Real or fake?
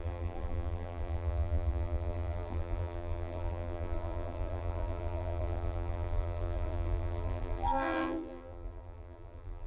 fake